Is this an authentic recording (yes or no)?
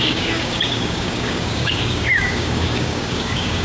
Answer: no